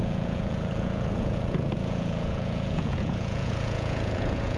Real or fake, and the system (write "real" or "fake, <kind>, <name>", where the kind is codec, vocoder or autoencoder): fake, vocoder, Vocos